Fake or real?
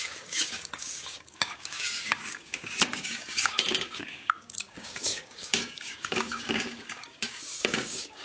fake